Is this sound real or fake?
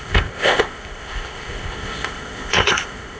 fake